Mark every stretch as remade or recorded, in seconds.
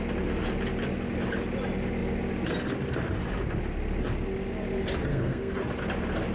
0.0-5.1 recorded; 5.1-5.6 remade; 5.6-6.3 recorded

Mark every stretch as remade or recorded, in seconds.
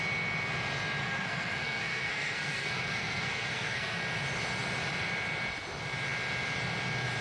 0.0-1.0 recorded; 1.0-4.0 remade; 4.0-7.2 recorded